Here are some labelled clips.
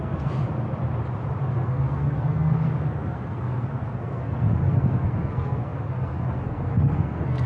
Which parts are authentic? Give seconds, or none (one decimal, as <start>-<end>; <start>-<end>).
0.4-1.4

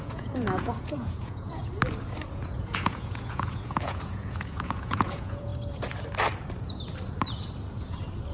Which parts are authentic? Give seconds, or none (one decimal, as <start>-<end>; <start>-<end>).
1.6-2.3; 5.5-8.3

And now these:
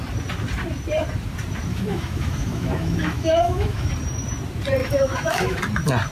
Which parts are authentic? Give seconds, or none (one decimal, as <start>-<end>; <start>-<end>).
0.0-1.7; 3.9-4.8; 5.6-6.1